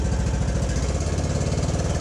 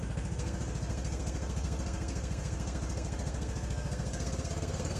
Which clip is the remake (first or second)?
second